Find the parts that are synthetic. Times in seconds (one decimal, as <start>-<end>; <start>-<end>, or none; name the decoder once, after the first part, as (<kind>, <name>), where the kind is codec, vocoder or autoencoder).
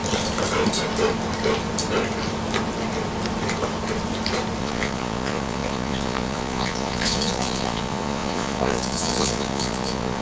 4.6-10.2 (vocoder, Vocos)